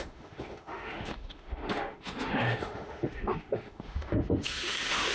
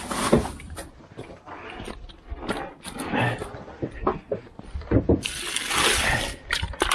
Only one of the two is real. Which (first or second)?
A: second